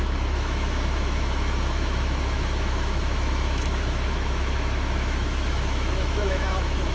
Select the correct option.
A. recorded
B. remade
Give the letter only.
B